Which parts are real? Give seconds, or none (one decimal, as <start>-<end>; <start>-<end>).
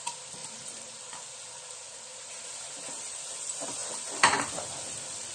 0.0-0.4; 1.0-2.1; 3.0-5.3